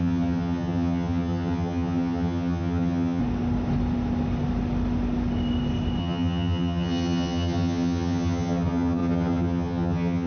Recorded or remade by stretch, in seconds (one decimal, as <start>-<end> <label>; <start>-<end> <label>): 0.0-3.2 remade; 3.2-6.0 recorded; 6.0-10.3 remade